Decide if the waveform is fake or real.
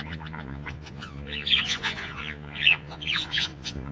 fake